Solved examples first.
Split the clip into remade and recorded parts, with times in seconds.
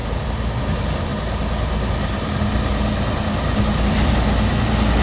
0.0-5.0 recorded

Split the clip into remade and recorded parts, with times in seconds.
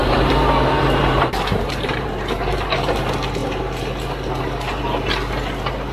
0.0-2.1 remade; 2.1-5.9 recorded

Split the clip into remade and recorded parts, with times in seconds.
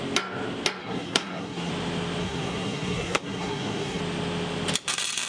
0.0-0.8 recorded; 0.8-1.7 remade; 1.7-2.2 recorded; 2.2-4.0 remade; 4.0-5.3 recorded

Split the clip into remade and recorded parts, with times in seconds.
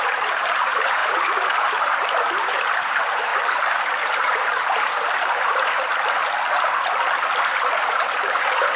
0.0-3.3 remade; 3.3-4.1 recorded; 4.1-5.9 remade; 5.9-7.9 recorded; 7.9-8.8 remade